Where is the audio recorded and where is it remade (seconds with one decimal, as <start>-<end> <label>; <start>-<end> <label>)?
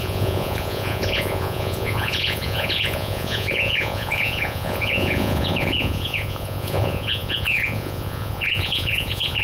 0.0-9.4 remade